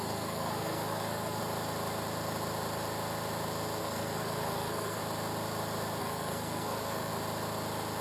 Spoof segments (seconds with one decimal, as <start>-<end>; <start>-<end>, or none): 0.0-1.4; 3.8-5.0; 6.0-7.1